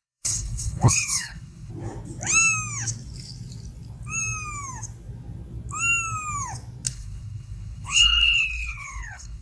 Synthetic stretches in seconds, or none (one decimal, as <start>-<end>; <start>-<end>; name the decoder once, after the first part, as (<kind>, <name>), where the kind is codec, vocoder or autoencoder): 0.0-1.7 (codec, HILCodec); 6.9-9.4